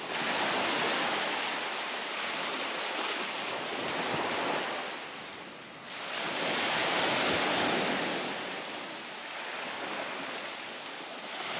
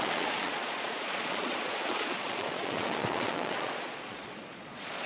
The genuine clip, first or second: first